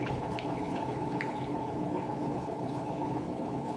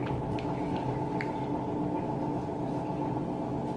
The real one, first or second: second